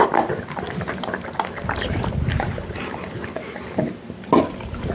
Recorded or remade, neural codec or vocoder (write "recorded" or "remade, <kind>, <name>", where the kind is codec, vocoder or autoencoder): recorded